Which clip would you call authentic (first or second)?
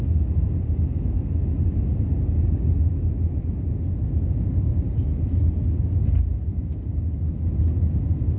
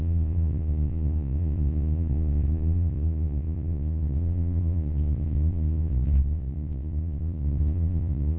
first